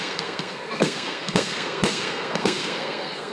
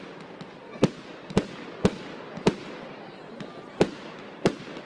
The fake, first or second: first